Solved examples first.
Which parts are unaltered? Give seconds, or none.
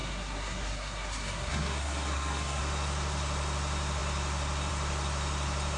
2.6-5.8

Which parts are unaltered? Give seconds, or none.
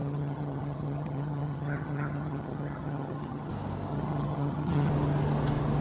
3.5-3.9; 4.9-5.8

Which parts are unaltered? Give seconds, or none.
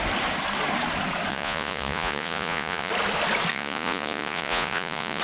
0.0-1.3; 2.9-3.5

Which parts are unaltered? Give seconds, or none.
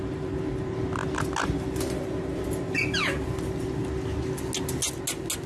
0.0-5.5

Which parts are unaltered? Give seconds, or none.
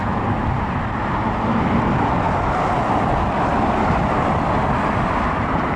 0.0-5.8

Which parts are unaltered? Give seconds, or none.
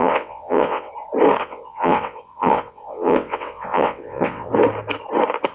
0.9-1.4; 4.5-5.5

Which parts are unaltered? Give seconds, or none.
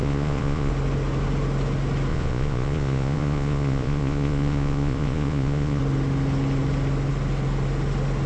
0.7-2.1; 5.8-8.3